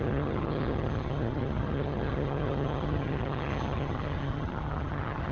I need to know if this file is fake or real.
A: fake